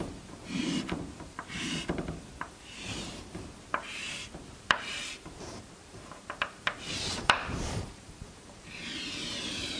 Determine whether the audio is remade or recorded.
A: remade